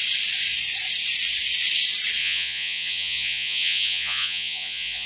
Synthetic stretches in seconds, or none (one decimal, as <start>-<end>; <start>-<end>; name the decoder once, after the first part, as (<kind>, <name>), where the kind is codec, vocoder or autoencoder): 2.2-5.1 (vocoder, Vocos)